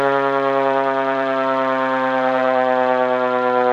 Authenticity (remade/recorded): remade